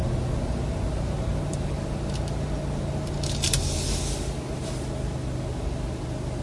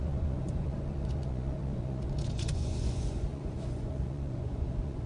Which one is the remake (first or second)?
second